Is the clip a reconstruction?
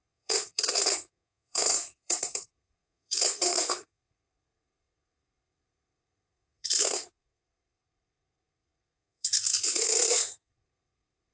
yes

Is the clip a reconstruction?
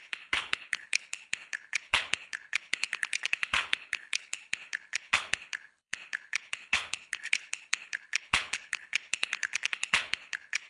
yes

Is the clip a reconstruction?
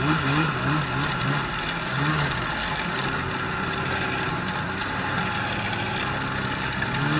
no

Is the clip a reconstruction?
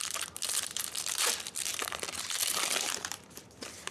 yes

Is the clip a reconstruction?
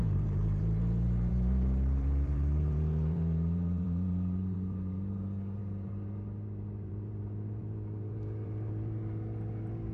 yes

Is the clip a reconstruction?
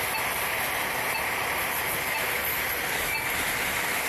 no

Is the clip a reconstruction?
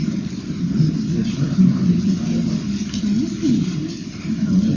no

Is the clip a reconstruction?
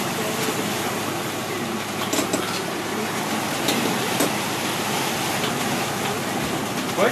no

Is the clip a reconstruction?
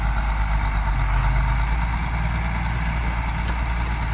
no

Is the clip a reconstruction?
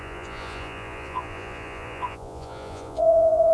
yes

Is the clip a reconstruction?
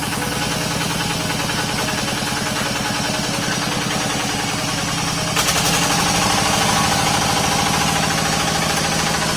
no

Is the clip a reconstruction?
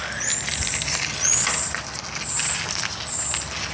no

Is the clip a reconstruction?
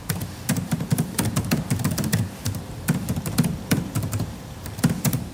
yes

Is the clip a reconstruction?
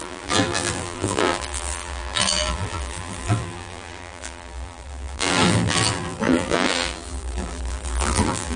yes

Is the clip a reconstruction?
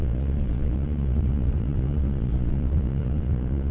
yes